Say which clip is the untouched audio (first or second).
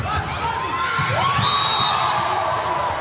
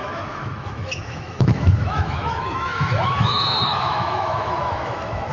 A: first